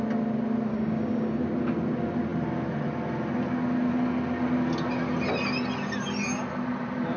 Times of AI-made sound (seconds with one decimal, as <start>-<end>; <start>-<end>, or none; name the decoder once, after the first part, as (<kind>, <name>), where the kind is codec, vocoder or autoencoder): 0.7-1.4 (codec, DAC)